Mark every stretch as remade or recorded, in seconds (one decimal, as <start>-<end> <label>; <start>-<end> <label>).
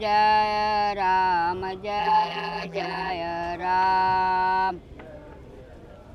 0.0-2.0 recorded; 2.0-3.1 remade; 3.1-6.1 recorded